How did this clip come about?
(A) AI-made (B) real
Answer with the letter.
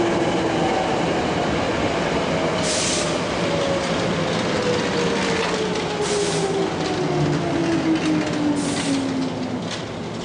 B